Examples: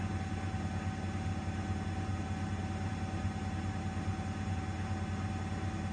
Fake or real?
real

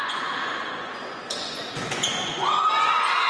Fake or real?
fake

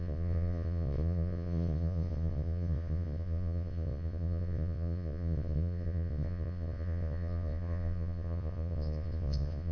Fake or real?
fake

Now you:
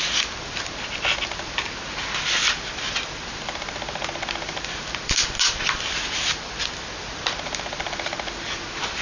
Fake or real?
real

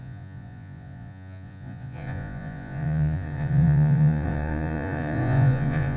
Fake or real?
fake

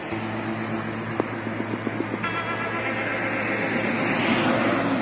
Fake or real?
real